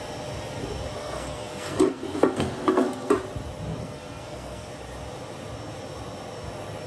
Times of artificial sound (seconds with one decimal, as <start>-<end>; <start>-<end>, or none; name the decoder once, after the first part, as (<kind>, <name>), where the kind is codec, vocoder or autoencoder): 1.0-3.1 (codec, SNAC); 3.8-4.7